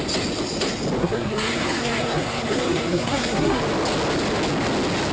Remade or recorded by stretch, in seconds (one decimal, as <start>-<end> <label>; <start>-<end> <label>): 0.0-1.0 recorded; 1.0-3.6 remade; 3.6-5.1 recorded